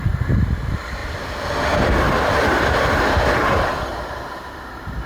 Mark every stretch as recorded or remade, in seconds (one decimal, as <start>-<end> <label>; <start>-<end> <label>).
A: 0.0-1.0 recorded; 1.0-3.1 remade; 3.1-3.9 recorded; 3.9-4.4 remade; 4.4-5.1 recorded